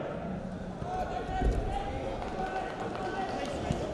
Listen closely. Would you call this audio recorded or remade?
recorded